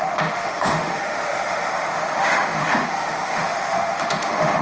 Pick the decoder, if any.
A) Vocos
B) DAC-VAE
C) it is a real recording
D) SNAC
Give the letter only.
B